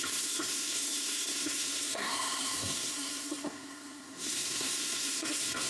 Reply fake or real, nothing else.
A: fake